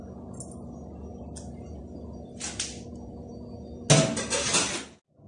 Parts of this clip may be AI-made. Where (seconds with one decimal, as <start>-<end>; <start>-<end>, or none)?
none